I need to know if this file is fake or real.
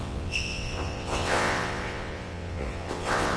fake